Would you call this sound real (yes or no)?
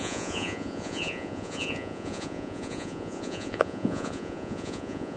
no